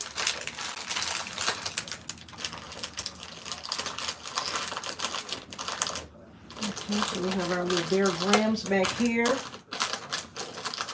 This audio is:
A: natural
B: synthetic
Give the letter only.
A